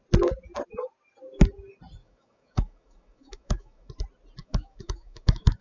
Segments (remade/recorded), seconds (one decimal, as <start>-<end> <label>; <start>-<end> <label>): 0.0-2.0 recorded; 2.0-3.9 remade; 3.9-4.4 recorded; 4.4-5.6 remade